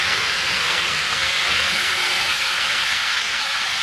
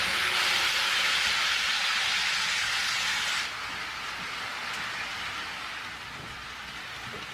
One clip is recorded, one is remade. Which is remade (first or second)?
first